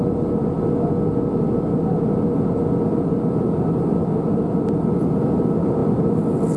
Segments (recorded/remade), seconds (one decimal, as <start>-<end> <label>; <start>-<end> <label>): 0.0-6.6 recorded